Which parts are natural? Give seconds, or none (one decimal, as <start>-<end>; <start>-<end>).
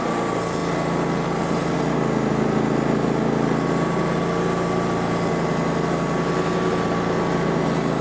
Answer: 0.0-8.0